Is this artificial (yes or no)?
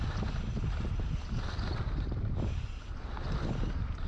no